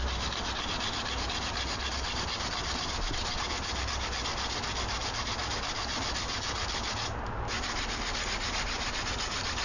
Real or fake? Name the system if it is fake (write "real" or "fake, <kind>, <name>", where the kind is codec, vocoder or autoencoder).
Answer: real